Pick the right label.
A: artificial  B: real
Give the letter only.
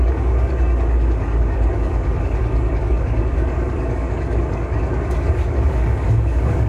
A